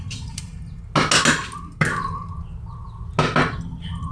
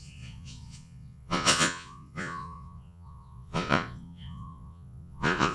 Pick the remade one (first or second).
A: second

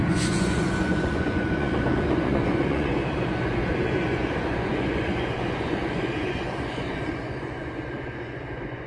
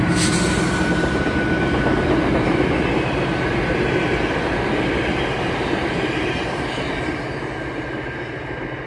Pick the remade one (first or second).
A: first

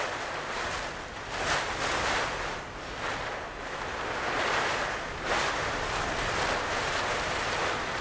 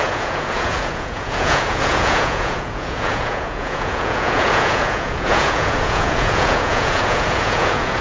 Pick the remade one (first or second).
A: second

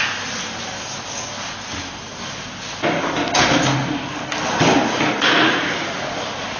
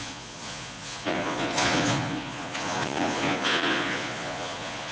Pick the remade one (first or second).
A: second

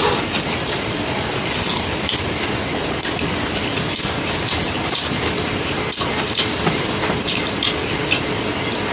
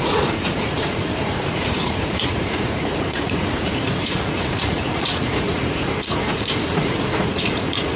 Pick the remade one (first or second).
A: second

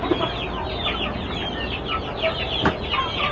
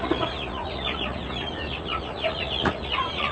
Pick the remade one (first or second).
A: second